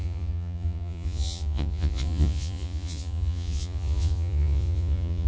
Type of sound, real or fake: fake